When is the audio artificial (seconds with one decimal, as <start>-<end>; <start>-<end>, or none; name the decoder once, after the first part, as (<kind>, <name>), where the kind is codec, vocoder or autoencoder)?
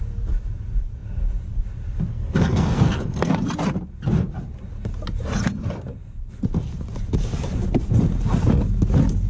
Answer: 2.1-3.3 (codec, SNAC)